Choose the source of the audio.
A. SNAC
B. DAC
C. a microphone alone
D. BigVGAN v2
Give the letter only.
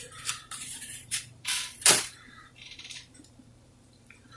D